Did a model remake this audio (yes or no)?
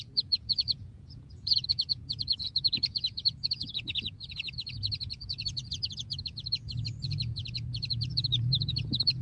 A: yes